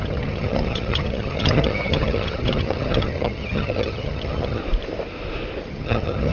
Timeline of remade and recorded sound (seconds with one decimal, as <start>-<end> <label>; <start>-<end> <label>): 0.0-4.6 remade; 4.6-5.7 recorded; 5.7-6.3 remade